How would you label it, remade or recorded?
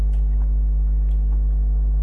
recorded